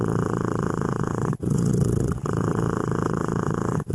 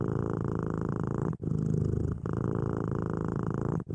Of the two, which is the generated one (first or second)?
first